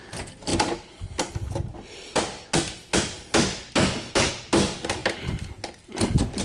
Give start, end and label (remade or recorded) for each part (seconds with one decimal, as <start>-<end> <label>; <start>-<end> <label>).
0.0-6.4 recorded